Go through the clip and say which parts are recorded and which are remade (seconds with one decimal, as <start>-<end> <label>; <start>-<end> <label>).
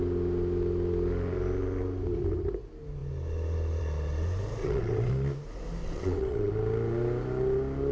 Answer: 0.0-4.6 recorded; 4.6-5.1 remade; 5.1-5.8 recorded; 5.8-6.5 remade; 6.5-7.9 recorded